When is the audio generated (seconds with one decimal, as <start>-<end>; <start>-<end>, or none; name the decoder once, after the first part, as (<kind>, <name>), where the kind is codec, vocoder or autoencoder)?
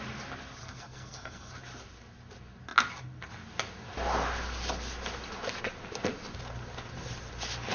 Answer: 0.6-1.5 (codec, SNAC)